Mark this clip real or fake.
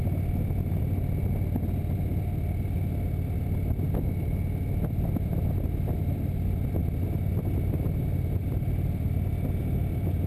real